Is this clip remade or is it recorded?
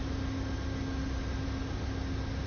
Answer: recorded